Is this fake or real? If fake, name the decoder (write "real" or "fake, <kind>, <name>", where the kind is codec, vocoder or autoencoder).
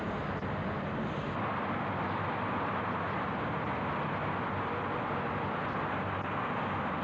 real